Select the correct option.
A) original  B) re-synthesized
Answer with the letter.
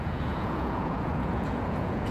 B